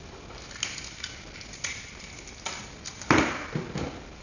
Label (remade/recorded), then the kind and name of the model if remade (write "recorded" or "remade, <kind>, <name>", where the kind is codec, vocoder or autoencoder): recorded